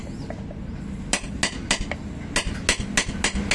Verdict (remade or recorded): recorded